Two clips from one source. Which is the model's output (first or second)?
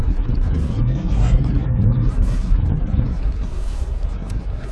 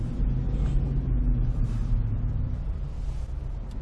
first